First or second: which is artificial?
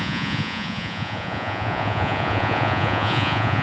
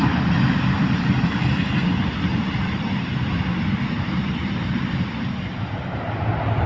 first